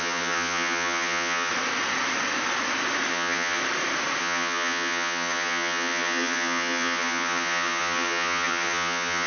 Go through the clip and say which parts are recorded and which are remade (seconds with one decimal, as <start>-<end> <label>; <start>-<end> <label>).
0.0-1.5 remade; 1.5-3.1 recorded; 3.1-3.6 remade; 3.6-4.2 recorded; 4.2-9.3 remade